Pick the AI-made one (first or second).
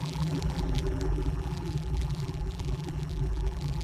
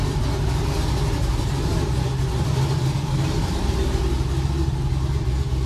first